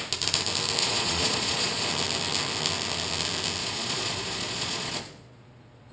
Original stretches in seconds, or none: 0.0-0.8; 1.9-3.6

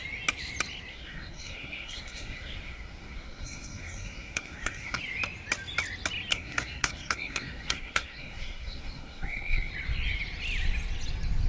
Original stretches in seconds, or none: 0.0-0.9; 5.0-6.3; 9.7-11.5

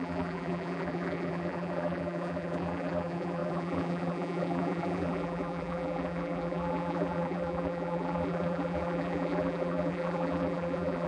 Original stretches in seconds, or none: none

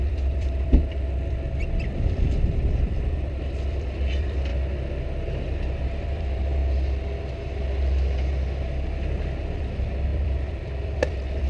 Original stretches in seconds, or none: 4.5-5.4; 6.6-9.2

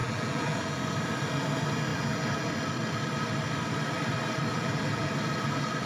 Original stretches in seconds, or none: 0.8-1.9; 2.5-4.5; 5.1-5.9

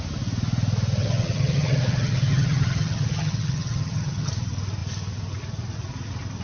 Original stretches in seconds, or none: 0.0-1.0; 4.3-6.4